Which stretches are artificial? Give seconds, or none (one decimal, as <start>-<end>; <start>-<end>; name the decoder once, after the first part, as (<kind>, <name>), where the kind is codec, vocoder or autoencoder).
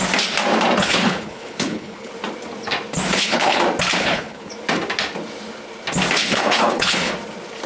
0.8-2.1 (codec, HILCodec); 3.1-3.6; 4.0-4.5; 6.2-7.1